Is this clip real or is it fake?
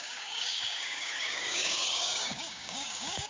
fake